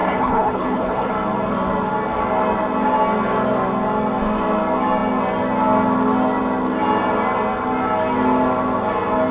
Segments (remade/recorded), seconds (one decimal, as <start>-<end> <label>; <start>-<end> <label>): 0.0-1.1 remade; 1.1-9.3 recorded